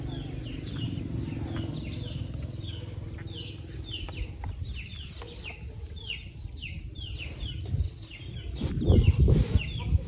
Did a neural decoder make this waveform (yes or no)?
no